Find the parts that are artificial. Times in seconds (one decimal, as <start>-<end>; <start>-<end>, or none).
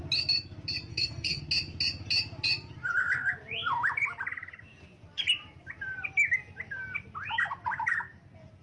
0.9-1.4